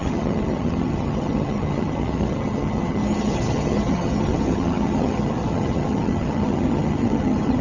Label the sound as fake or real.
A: fake